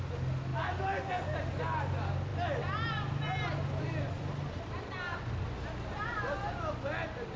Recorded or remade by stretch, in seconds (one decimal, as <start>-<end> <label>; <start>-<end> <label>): 0.0-7.4 recorded